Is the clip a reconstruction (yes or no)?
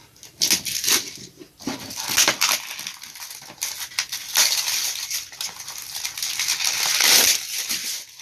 no